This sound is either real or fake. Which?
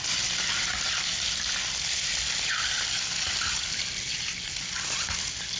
real